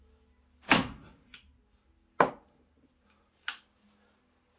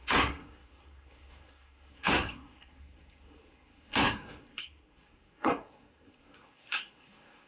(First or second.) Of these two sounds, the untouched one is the first